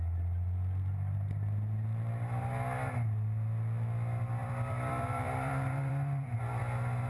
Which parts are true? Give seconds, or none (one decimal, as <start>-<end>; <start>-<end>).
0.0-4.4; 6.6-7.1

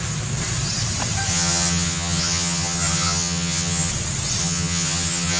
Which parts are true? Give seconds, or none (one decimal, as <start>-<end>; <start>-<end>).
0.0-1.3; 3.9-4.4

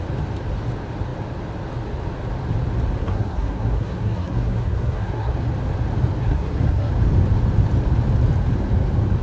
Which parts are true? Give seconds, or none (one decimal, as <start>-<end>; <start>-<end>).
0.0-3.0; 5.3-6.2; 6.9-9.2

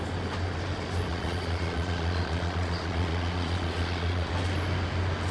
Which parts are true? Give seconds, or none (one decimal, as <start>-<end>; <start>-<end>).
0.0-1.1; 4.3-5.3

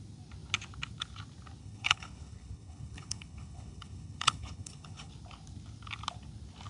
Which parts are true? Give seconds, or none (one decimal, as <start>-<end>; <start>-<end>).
0.0-1.6; 5.1-6.7

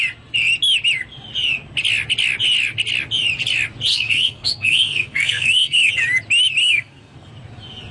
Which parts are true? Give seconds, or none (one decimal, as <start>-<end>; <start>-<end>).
0.0-3.9; 5.9-6.6; 7.3-7.9

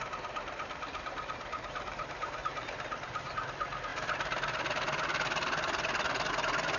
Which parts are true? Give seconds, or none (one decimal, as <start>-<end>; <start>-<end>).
0.0-0.9; 3.3-6.8

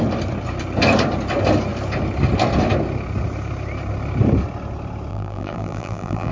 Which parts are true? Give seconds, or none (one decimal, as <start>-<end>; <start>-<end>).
0.0-5.1